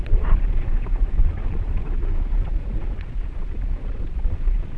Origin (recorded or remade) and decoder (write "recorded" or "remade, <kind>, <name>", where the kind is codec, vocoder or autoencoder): remade, vocoder, Vocos